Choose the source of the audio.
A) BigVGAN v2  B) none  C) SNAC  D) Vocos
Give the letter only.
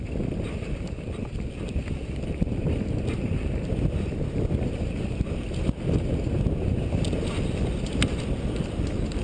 B